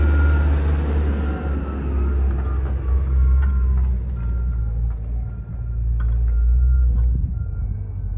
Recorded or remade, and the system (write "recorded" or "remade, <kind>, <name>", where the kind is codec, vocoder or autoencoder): recorded